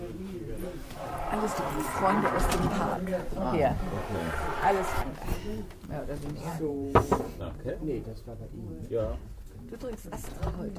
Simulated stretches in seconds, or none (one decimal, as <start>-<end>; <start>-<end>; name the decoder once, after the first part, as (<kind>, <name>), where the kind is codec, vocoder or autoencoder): 0.8-3.8 (vocoder, BigVGAN v2); 6.5-7.7